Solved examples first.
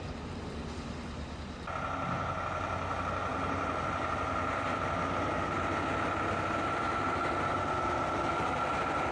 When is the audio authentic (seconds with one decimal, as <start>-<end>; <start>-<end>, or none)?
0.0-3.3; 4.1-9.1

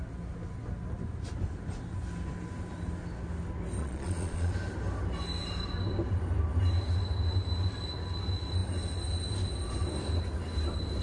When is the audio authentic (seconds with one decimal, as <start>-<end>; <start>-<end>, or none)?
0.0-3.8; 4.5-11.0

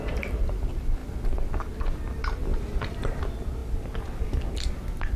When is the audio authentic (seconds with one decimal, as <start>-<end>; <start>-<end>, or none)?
0.0-2.5; 3.2-5.2